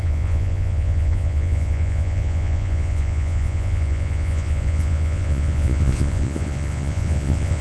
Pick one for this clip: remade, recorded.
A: remade